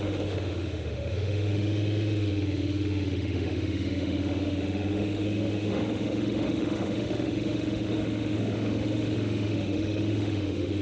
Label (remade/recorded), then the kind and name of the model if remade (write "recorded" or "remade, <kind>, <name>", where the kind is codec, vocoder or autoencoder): remade, autoencoder, DAC-VAE